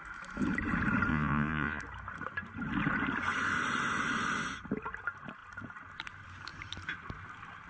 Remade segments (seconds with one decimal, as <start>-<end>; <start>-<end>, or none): 1.1-1.8